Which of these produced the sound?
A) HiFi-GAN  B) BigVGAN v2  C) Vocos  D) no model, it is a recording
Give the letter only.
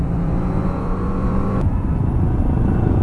C